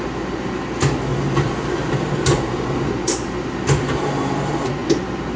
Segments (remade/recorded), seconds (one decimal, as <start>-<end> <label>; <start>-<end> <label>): 0.0-5.4 recorded